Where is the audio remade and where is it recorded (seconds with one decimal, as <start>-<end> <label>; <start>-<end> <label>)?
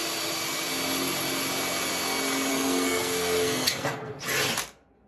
0.0-2.5 recorded; 2.5-4.2 remade; 4.2-5.1 recorded